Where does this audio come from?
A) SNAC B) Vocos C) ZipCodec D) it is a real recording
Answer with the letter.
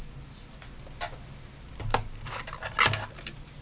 D